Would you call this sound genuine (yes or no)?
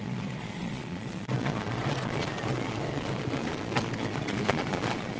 no